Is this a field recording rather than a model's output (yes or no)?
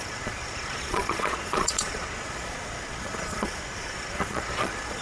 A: no